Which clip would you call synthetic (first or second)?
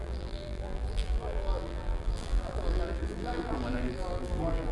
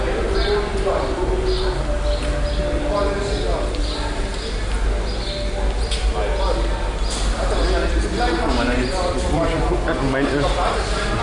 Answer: first